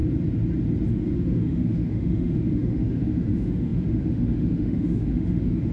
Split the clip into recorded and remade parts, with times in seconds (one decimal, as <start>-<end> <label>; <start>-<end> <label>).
0.0-0.9 recorded; 0.9-5.7 remade